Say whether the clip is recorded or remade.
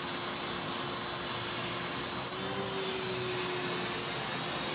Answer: recorded